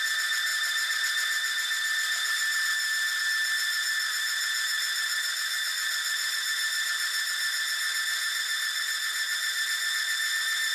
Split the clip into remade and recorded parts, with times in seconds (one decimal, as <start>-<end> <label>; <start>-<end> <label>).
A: 0.0-10.7 recorded